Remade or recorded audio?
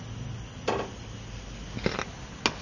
recorded